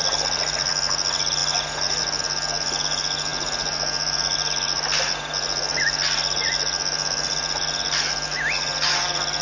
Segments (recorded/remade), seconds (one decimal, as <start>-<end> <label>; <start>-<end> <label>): 0.0-9.4 recorded